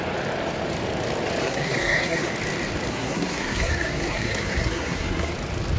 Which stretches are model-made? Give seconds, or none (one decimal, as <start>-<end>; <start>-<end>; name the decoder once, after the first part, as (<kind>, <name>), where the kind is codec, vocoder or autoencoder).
1.4-2.3 (codec, SNAC); 2.9-5.3